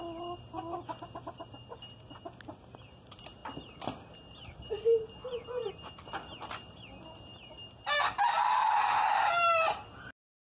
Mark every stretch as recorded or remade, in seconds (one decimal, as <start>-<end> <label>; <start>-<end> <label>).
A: 0.0-10.5 recorded